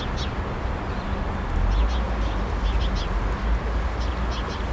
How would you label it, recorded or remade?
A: recorded